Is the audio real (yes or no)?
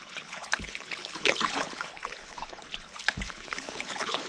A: no